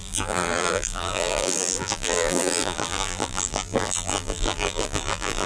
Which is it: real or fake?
fake